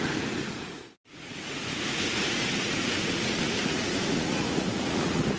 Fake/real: fake